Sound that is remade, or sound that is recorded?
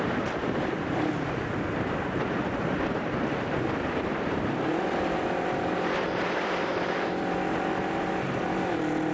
remade